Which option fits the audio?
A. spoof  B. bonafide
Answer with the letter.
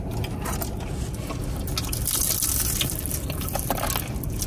B